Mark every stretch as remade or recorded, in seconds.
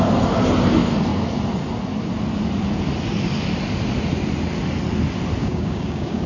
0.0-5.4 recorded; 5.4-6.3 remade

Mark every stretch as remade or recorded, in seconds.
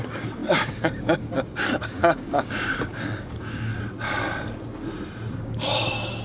0.0-3.7 remade; 3.7-5.4 recorded; 5.4-6.2 remade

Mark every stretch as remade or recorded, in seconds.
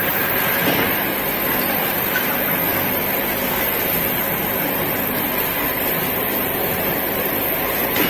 0.0-8.1 recorded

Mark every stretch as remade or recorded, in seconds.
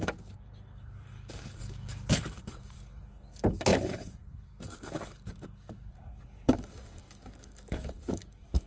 0.0-8.7 remade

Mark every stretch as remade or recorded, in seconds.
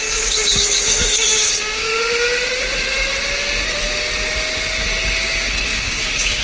0.0-1.9 remade; 1.9-5.7 recorded; 5.7-6.4 remade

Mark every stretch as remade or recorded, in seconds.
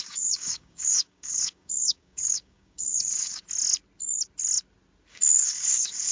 0.0-3.4 remade; 3.4-5.1 recorded; 5.1-6.1 remade